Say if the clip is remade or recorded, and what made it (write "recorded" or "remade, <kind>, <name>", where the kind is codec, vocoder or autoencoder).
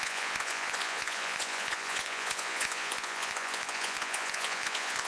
remade, vocoder, Vocos